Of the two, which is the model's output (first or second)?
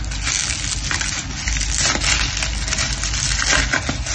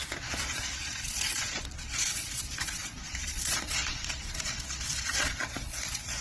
second